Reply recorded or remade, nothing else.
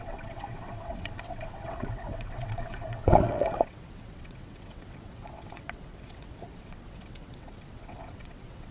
remade